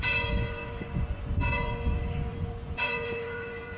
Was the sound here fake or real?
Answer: fake